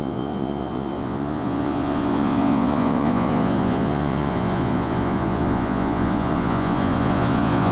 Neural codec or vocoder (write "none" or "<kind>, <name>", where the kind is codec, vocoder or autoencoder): vocoder, Vocos